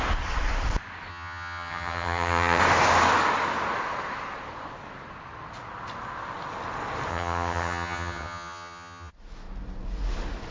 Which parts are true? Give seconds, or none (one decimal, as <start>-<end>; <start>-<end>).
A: 0.0-1.1; 2.6-7.1; 9.1-10.5